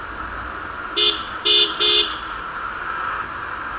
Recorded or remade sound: recorded